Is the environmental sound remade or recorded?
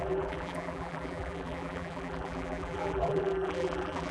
remade